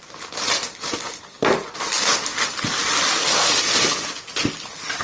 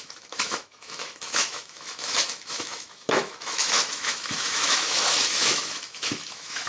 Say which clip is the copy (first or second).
second